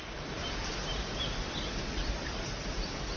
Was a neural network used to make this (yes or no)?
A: yes